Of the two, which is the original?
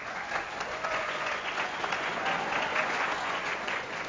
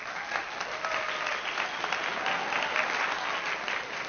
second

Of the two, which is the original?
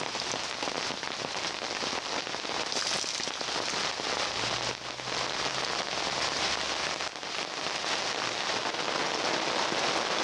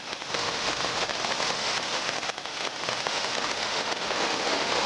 first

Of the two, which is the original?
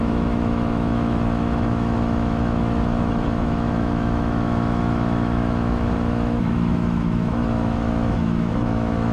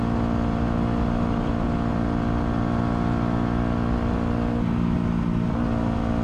second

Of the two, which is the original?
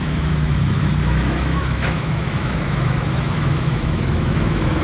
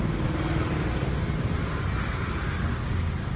second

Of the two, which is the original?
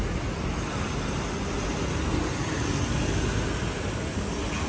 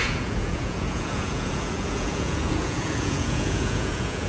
first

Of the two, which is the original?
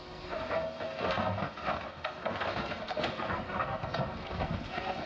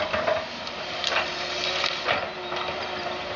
second